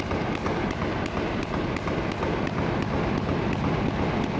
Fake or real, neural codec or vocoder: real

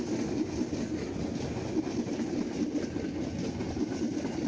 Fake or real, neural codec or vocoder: real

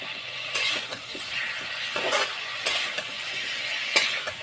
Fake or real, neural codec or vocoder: fake, vocoder, Vocos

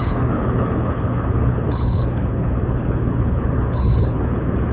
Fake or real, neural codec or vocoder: fake, codec, HILCodec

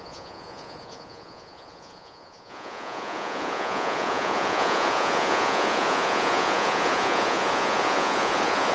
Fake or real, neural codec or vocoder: fake, vocoder, Vocos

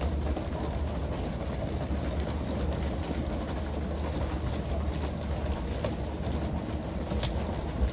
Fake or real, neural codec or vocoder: real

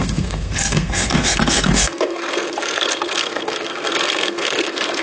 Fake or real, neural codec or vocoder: fake, codec, SNAC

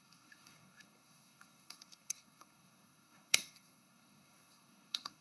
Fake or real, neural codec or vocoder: fake, codec, SNAC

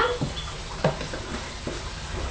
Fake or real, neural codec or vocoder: real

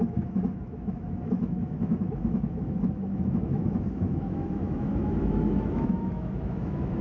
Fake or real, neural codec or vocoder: fake, autoencoder, DAC-VAE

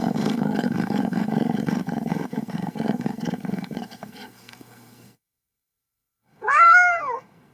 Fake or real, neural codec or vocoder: fake, codec, SNAC